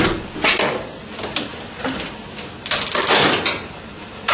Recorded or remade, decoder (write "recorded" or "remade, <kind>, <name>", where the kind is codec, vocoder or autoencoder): recorded